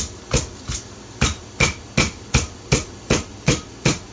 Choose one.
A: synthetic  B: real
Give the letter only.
B